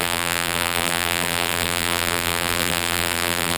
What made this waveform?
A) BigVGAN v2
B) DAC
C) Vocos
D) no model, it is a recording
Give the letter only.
A